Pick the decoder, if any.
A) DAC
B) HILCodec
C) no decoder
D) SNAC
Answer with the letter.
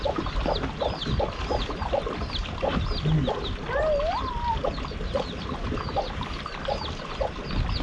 C